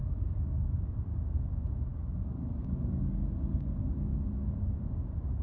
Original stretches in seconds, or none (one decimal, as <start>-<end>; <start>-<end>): 1.0-1.9; 3.3-5.4